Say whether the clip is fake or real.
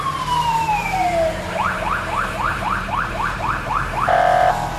fake